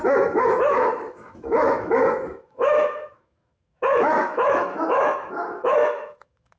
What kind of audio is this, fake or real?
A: fake